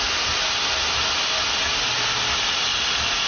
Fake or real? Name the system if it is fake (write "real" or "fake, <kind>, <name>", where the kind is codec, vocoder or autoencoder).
real